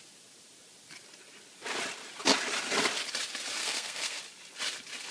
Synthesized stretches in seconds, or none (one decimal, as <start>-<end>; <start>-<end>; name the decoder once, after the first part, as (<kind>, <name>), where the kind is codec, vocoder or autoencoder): 3.6-4.2 (codec, SNAC)